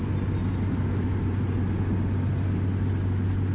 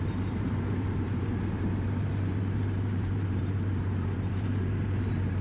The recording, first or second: first